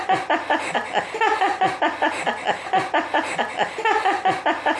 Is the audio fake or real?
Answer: real